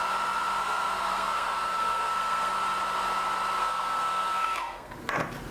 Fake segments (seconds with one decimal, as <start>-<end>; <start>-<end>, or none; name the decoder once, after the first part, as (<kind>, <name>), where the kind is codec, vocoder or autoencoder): 0.6-2.5 (codec, SNAC); 3.6-4.9